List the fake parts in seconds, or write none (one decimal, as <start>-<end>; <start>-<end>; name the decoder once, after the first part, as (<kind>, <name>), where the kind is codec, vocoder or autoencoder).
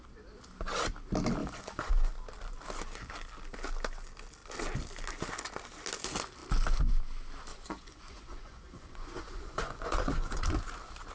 1.4-2.1 (vocoder, Vocos); 7.5-10.4